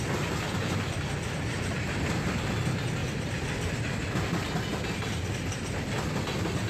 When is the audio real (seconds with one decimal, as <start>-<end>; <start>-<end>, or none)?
0.0-6.7